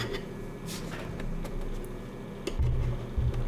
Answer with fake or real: real